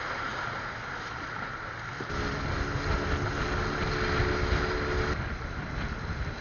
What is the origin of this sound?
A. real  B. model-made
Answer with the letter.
A